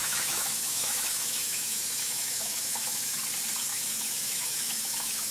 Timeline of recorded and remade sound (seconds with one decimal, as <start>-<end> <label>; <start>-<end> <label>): 0.0-3.2 remade; 3.2-3.7 recorded; 3.7-5.3 remade